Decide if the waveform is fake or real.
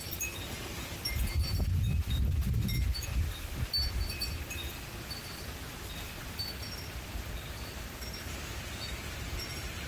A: fake